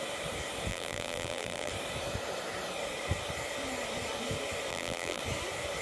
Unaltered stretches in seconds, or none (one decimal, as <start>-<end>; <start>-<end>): 0.0-0.7; 1.7-4.7; 5.2-5.8